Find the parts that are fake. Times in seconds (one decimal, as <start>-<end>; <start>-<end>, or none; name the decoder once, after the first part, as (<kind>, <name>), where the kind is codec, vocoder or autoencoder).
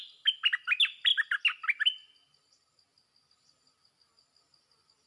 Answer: none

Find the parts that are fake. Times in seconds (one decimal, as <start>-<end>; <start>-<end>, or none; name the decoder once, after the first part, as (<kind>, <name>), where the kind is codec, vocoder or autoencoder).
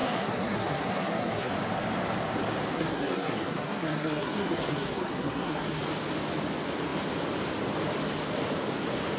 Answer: 0.0-1.5 (codec, SNAC); 2.7-5.8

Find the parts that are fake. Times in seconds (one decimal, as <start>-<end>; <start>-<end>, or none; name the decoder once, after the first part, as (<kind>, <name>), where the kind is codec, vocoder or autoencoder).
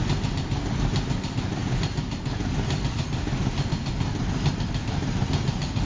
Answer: none